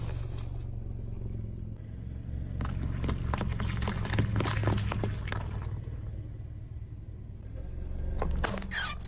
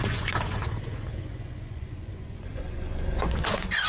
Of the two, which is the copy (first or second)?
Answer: second